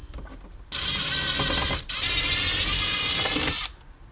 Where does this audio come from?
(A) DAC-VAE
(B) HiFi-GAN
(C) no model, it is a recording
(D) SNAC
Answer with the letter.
C